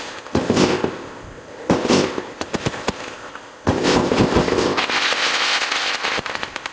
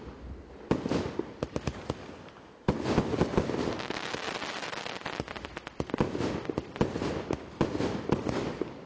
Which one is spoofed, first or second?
first